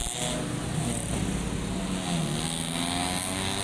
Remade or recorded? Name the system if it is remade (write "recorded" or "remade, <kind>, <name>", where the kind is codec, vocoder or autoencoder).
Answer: recorded